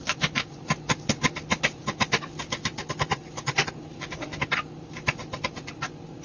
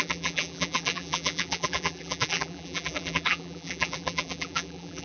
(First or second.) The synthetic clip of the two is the second